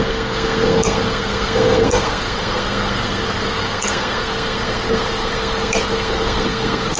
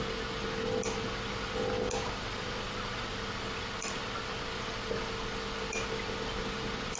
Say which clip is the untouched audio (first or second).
second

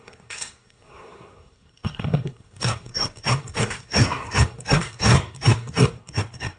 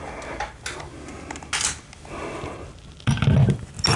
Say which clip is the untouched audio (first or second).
second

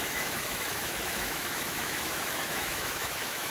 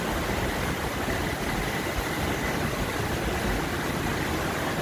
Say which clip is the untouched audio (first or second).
second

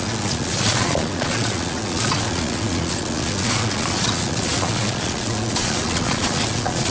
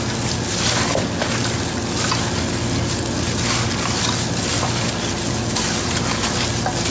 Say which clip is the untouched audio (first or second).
second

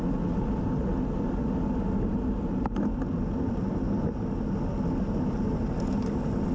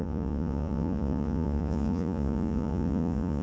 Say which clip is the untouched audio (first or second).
first